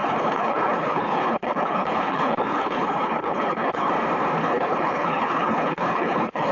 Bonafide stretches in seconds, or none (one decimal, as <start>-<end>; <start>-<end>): 3.9-4.4